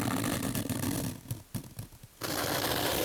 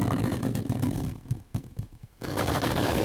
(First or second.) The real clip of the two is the first